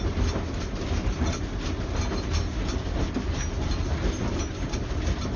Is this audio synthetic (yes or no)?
no